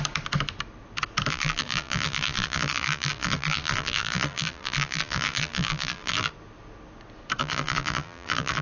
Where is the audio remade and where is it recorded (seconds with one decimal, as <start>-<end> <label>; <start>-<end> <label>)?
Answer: 0.0-1.3 recorded; 1.3-6.3 remade; 6.3-7.4 recorded; 7.4-8.6 remade